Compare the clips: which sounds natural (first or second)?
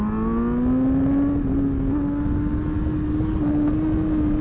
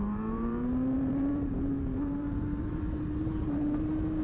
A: first